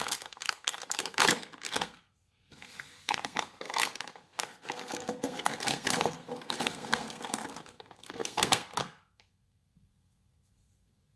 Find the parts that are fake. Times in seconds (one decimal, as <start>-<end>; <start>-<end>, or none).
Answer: 0.0-11.2